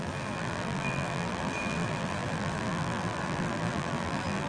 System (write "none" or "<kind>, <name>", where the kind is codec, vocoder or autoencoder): vocoder, BigVGAN v2